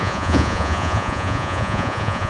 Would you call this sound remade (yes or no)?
yes